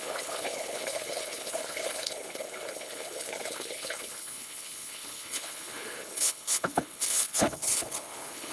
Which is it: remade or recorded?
remade